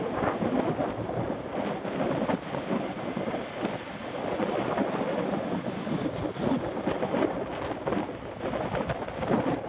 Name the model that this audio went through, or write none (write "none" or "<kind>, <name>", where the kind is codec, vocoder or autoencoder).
none